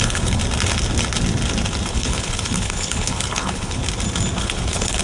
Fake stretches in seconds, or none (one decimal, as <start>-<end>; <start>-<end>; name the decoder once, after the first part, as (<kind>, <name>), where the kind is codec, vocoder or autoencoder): 0.0-0.4 (codec, HILCodec); 1.9-3.8; 4.4-5.0